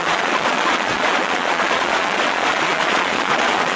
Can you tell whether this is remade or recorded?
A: remade